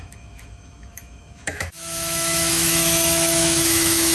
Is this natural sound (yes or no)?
no